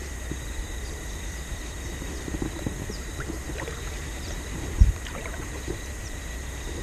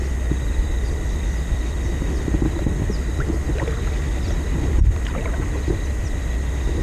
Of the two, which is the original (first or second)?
second